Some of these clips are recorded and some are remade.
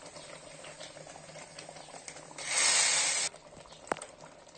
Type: recorded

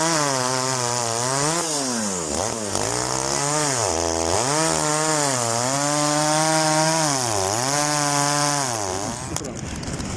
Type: recorded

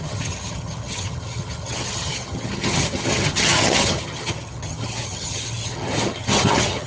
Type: remade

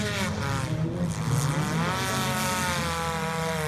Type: recorded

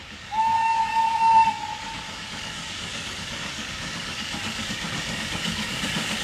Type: remade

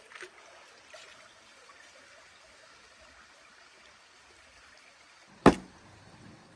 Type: recorded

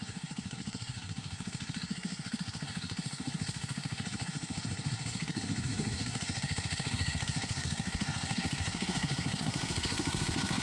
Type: remade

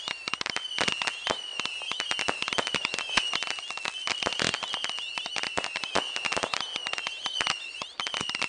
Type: recorded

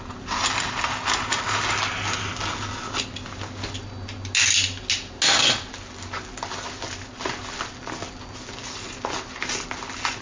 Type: recorded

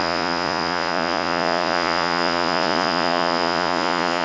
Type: remade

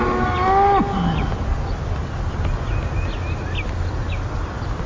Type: recorded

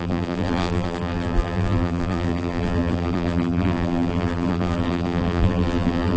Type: remade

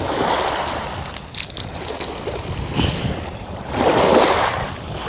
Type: recorded